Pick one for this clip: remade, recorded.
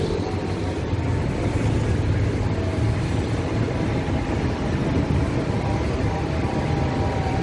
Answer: recorded